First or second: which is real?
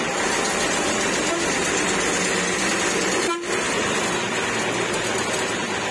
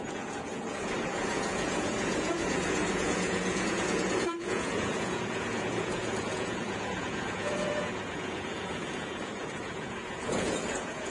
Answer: first